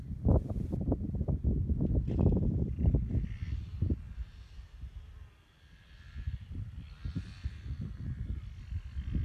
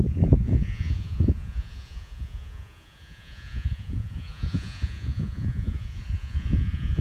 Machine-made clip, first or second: second